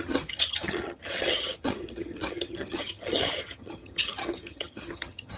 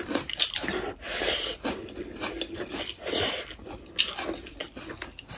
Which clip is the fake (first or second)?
first